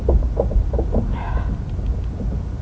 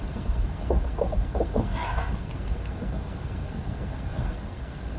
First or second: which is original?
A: first